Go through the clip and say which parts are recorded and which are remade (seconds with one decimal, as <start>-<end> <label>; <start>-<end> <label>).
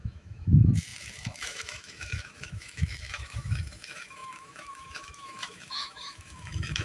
0.0-6.8 remade